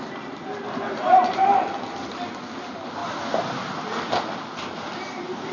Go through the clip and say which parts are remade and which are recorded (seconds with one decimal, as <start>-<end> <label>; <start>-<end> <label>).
0.0-5.5 recorded